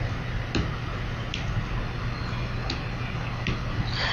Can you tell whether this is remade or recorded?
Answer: recorded